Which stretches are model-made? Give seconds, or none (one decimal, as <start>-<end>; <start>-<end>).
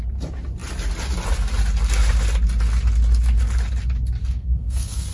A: 4.2-5.1